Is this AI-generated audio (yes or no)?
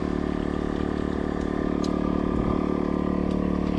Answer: no